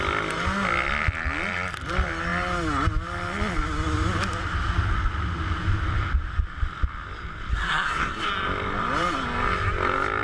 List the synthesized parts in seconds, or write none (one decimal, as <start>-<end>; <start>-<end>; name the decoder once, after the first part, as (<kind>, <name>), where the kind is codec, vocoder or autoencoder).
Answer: 7.5-8.3 (codec, SNAC)

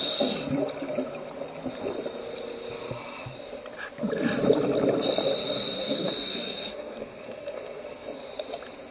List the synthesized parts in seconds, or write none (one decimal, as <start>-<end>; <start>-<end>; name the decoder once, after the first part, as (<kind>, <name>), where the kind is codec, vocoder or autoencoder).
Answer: 5.8-8.2 (codec, SNAC)